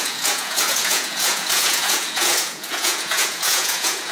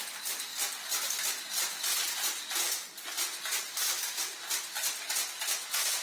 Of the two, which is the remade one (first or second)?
first